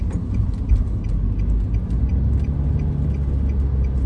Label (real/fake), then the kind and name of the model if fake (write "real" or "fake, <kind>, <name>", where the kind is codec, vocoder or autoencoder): real